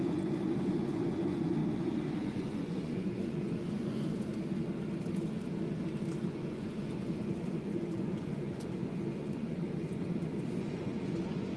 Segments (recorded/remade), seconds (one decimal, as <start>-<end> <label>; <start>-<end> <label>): 0.0-4.3 remade; 4.3-6.2 recorded; 6.2-11.6 remade